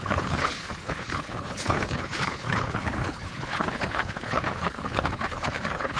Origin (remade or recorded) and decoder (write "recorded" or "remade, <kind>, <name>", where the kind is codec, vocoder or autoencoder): remade, codec, HILCodec